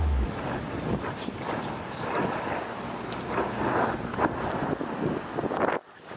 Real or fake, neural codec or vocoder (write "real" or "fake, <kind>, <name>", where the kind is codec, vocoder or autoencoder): real